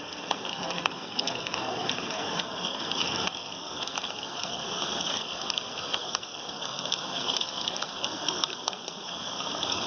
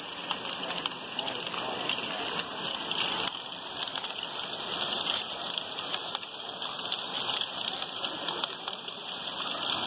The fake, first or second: first